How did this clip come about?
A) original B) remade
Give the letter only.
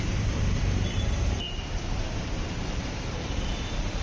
B